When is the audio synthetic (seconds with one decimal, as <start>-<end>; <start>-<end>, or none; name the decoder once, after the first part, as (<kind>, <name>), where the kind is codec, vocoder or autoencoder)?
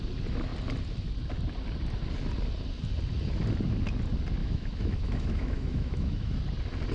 4.4-6.4 (autoencoder, DAC-VAE)